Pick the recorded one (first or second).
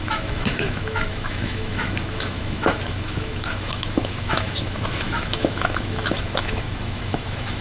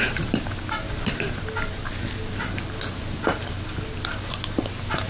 second